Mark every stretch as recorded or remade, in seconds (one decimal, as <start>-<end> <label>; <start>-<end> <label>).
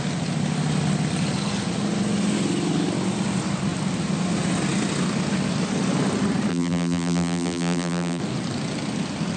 0.0-6.5 recorded; 6.5-8.2 remade; 8.2-9.4 recorded